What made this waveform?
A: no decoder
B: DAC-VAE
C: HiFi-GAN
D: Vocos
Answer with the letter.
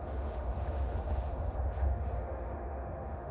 B